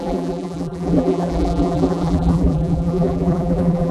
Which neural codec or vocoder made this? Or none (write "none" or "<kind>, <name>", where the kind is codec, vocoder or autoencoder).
vocoder, BigVGAN v2